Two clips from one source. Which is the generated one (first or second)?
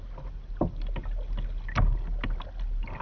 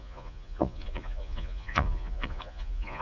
second